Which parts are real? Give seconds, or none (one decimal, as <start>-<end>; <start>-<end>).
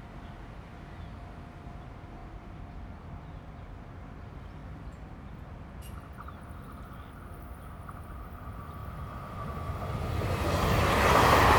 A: 0.0-2.2; 3.4-4.6; 5.6-11.6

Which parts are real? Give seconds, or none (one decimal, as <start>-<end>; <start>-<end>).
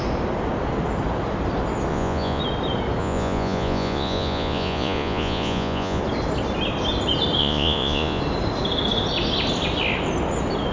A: 0.0-1.9; 2.4-3.0; 6.0-7.4; 8.2-10.7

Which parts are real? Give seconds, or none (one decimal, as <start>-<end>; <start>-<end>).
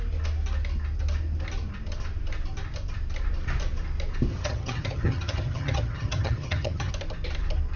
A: 0.0-4.3; 6.9-7.8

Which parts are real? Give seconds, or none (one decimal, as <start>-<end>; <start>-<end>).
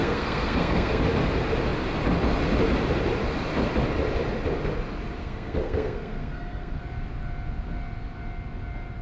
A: 1.0-5.2; 6.8-9.0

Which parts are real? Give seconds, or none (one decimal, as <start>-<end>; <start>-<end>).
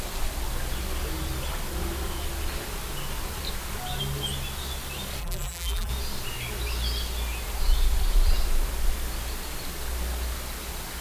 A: 0.0-5.2; 5.9-11.0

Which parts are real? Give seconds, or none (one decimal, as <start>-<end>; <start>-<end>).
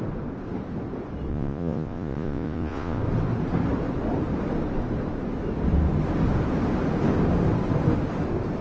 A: 0.0-1.3; 3.0-8.6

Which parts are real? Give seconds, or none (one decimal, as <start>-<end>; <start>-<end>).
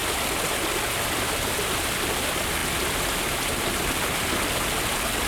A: 0.0-5.3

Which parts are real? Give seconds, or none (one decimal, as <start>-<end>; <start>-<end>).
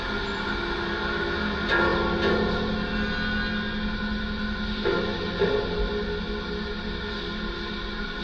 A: 0.0-8.2